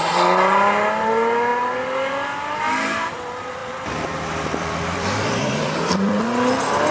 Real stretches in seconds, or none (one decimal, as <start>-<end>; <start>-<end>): 0.0-3.6; 6.2-6.9